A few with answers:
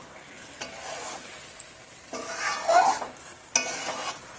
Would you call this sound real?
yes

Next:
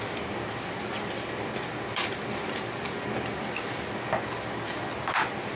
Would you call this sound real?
yes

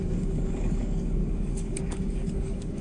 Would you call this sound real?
no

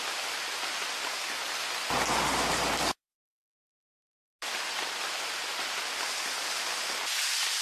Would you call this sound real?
yes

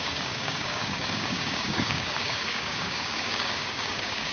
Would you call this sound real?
no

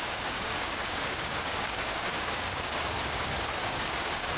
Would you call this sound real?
no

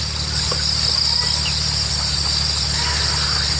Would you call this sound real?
yes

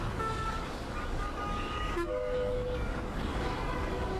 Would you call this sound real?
no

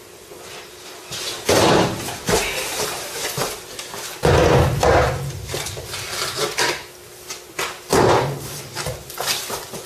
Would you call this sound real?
yes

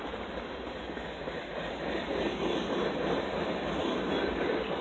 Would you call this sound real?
yes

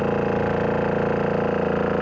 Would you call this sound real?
yes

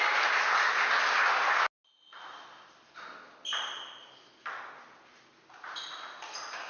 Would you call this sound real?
yes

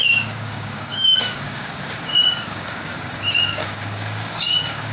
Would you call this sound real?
no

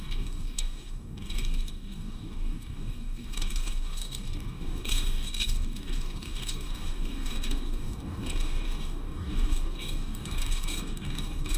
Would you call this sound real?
no